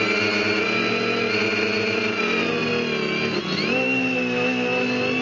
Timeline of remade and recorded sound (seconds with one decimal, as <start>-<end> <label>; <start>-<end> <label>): 0.0-5.2 recorded